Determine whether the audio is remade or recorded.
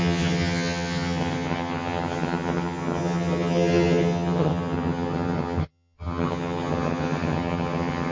remade